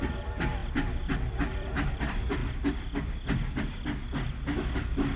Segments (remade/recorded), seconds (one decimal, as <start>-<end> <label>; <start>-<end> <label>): 0.0-0.6 remade; 0.6-1.3 recorded; 1.3-2.4 remade; 2.4-5.2 recorded